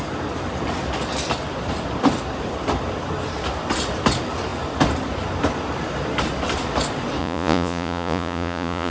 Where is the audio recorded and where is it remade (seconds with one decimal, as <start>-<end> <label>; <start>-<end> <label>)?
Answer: 0.0-7.2 recorded; 7.2-8.9 remade